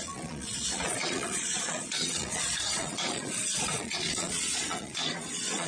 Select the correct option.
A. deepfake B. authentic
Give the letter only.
A